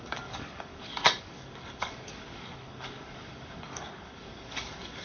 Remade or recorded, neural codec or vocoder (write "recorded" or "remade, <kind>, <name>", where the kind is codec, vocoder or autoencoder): remade, codec, DAC